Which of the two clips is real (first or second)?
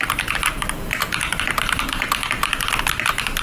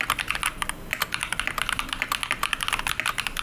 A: second